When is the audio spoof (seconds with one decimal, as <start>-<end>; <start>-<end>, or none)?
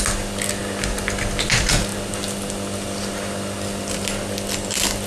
none